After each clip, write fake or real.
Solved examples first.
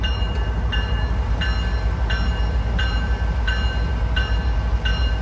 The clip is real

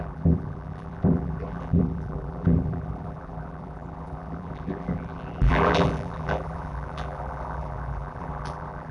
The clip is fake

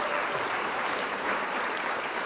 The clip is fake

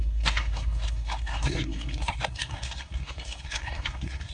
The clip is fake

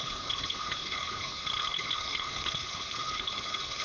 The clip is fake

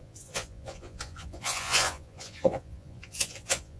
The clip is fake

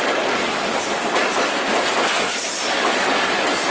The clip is real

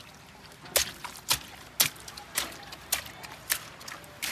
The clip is real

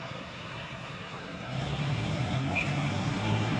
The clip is fake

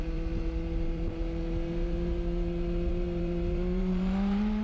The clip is fake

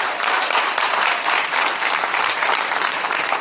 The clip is fake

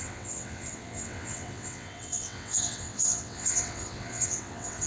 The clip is fake